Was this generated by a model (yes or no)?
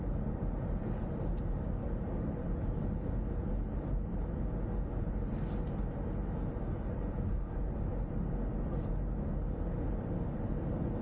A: no